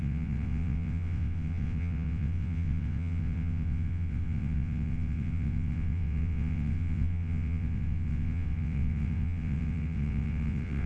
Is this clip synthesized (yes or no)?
yes